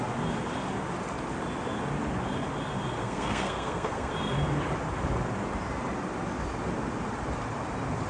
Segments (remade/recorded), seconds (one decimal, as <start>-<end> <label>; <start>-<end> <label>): 0.0-3.0 recorded; 3.0-4.1 remade; 4.1-8.1 recorded

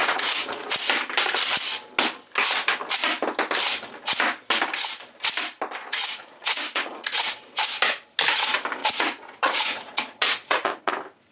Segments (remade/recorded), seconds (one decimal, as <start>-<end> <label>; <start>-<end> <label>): 0.0-0.7 remade; 0.7-5.8 recorded; 5.8-7.2 remade; 7.2-8.8 recorded; 8.8-10.9 remade; 10.9-11.3 recorded

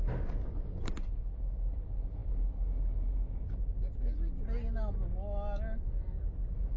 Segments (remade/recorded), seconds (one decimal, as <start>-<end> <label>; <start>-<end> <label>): 0.0-6.8 recorded

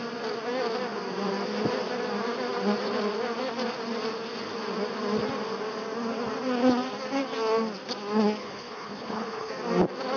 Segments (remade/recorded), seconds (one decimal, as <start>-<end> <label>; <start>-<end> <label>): 0.0-8.4 recorded; 8.4-9.5 remade; 9.5-10.2 recorded